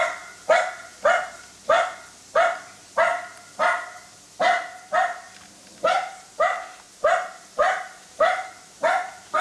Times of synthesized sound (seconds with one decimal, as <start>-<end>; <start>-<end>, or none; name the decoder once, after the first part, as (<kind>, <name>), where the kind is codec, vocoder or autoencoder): 7.6-9.4 (vocoder, BigVGAN v2)